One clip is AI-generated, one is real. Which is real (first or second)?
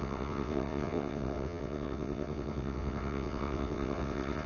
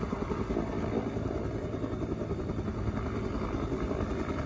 second